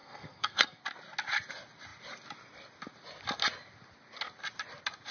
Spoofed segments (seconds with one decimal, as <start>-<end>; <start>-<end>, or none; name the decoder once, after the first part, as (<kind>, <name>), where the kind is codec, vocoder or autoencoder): 0.0-0.8 (codec, SNAC)

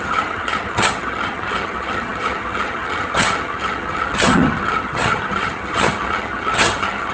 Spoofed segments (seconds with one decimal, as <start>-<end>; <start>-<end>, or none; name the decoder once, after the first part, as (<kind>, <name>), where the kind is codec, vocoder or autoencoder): 0.0-7.1 (vocoder, HiFi-GAN)

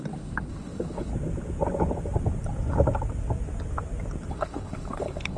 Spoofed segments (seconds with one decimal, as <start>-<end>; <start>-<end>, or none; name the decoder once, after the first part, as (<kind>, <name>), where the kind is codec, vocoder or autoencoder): 0.0-1.1 (codec, HILCodec); 4.3-5.4